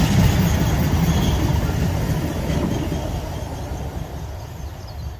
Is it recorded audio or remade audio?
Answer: recorded